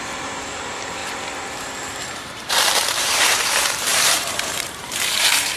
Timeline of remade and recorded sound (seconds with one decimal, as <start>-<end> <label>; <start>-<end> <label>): 0.0-5.6 remade